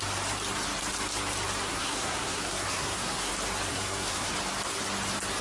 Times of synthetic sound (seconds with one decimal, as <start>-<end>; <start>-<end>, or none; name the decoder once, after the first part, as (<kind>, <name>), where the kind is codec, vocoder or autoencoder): 1.7-3.3 (codec, SNAC); 3.7-4.3